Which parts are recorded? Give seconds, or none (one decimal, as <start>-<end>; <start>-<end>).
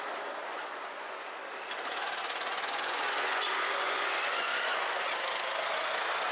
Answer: 0.0-0.5; 1.3-2.2; 5.1-6.3